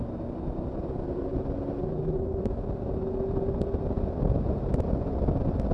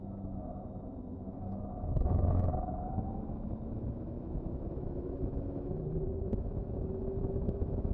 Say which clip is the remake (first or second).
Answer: second